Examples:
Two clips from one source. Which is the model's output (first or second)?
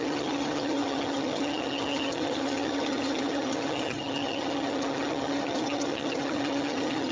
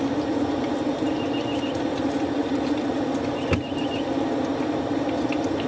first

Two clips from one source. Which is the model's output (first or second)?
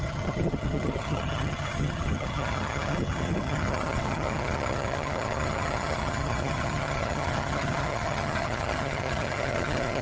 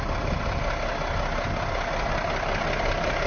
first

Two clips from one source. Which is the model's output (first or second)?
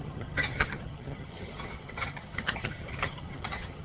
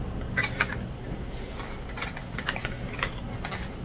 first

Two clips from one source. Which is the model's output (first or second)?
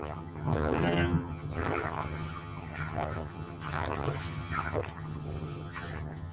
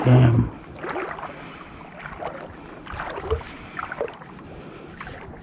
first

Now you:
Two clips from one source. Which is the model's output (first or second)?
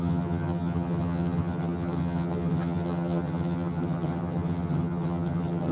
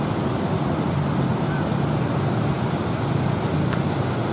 first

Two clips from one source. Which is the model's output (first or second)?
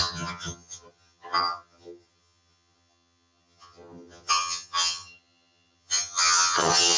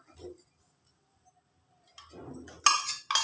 first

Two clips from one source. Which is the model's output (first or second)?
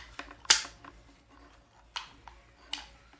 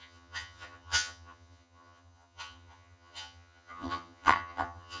second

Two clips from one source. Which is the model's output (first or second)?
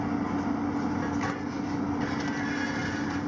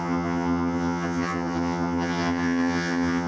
second